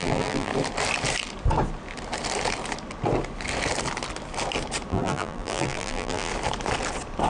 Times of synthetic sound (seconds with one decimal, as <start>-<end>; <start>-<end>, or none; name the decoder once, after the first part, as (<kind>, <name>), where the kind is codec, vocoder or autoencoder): 0.0-0.5 (vocoder, BigVGAN v2); 4.9-6.3